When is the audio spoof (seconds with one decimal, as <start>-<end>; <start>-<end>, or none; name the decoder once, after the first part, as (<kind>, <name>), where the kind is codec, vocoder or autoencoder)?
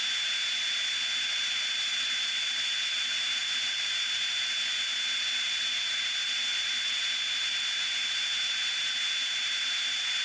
none